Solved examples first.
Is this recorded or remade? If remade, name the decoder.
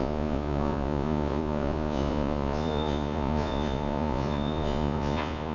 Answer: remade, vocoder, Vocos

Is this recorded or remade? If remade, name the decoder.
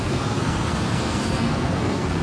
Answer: remade, codec, SNAC